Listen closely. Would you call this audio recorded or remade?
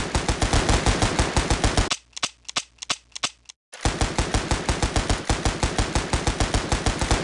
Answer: recorded